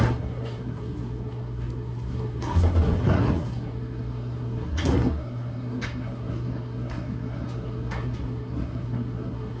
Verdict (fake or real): fake